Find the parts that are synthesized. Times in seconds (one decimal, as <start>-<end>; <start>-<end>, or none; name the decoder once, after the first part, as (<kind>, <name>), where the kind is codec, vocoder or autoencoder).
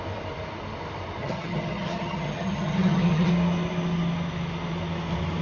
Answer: 1.2-3.3 (vocoder, HiFi-GAN)